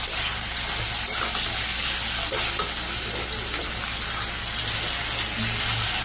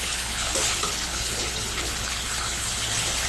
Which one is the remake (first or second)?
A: second